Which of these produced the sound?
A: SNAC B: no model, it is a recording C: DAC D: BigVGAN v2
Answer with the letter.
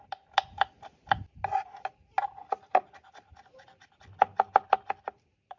B